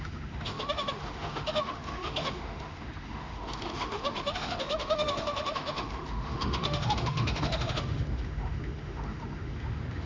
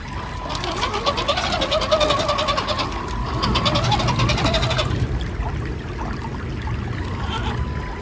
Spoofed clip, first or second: first